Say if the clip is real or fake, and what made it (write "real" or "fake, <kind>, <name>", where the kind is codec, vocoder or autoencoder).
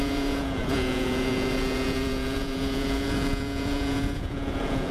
fake, vocoder, Vocos